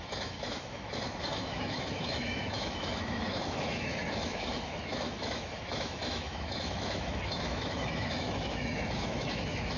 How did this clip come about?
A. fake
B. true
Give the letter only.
A